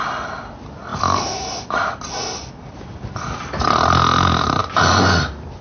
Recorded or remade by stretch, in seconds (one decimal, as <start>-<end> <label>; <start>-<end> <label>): 0.0-5.6 recorded